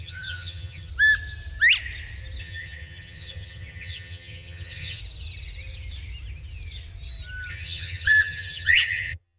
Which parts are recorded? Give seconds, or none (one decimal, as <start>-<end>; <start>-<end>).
0.9-2.4; 5.0-7.5